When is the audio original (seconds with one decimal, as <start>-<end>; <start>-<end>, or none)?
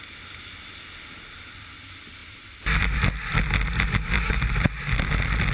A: 0.0-5.5